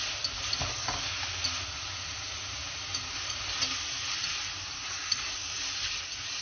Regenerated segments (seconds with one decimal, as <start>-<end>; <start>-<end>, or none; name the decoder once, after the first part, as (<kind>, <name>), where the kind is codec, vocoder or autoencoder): none

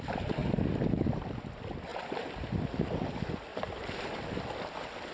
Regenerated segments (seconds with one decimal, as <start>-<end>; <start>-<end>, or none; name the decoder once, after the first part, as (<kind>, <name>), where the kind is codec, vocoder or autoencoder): 0.4-1.0 (vocoder, BigVGAN v2); 1.9-2.5; 3.5-4.4

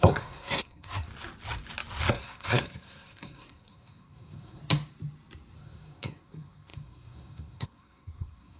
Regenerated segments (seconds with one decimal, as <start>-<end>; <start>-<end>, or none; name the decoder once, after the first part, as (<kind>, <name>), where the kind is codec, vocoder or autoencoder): 0.0-1.1 (codec, SNAC); 2.1-4.6; 5.6-8.6

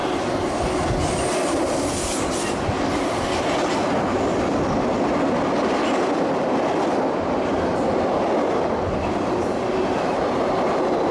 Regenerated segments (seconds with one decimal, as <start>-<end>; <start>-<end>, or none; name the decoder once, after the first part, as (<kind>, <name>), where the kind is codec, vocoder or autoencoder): none